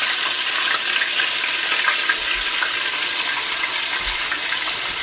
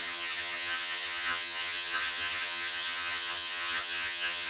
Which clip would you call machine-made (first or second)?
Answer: second